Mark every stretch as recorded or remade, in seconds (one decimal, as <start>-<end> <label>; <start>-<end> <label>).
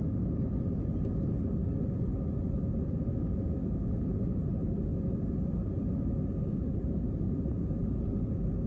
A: 0.0-3.1 recorded; 3.1-4.0 remade; 4.0-8.7 recorded